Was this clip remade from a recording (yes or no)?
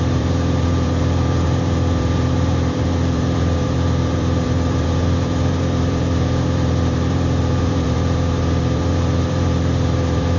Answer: yes